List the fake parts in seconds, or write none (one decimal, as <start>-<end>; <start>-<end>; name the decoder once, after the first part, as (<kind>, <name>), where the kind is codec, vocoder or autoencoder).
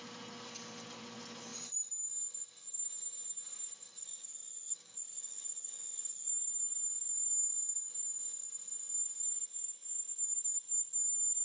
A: 4.0-6.3 (codec, DAC)